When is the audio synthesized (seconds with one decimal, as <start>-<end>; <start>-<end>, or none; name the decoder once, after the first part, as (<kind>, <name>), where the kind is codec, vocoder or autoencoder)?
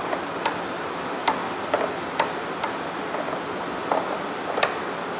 1.2-3.4 (vocoder, BigVGAN v2); 3.8-4.4